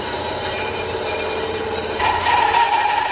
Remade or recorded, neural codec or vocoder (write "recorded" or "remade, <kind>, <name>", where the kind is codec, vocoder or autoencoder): remade, vocoder, BigVGAN v2